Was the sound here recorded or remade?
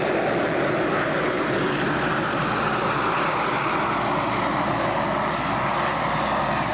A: recorded